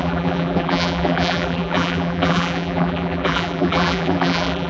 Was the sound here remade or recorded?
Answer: remade